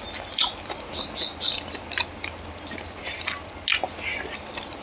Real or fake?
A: real